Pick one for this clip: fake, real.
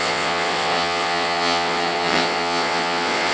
fake